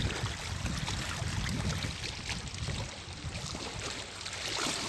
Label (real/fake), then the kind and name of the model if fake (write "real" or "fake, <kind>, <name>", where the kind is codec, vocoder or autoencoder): real